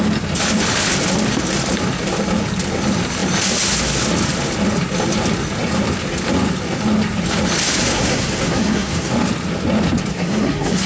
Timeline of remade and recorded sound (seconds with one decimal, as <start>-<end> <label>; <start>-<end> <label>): 0.0-7.8 recorded; 7.8-9.1 remade; 9.1-10.1 recorded; 10.1-10.9 remade